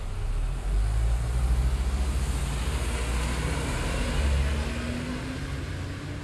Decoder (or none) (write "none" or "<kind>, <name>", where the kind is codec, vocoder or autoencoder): none